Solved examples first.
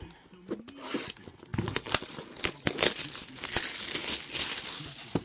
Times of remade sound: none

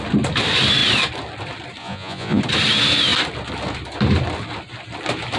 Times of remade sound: 1.8-2.4 (vocoder, Vocos)

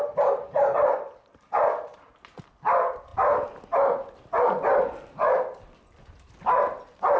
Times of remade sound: 0.0-3.1 (vocoder, BigVGAN v2); 5.8-7.2

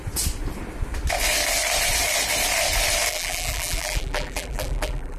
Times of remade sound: 3.1-5.2 (vocoder, BigVGAN v2)